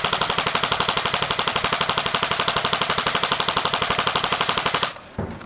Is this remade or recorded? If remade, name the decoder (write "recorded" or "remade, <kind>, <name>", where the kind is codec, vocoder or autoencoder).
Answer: recorded